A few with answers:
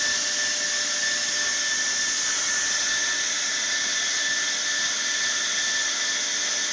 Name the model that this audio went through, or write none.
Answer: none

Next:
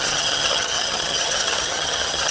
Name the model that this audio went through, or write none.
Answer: vocoder, HiFi-GAN